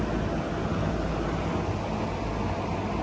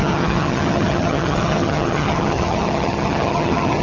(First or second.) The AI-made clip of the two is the second